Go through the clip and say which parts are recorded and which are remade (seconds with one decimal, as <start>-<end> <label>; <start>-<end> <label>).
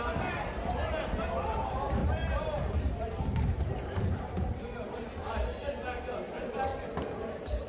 0.0-2.0 recorded; 2.0-5.1 remade; 5.1-6.7 recorded; 6.7-7.7 remade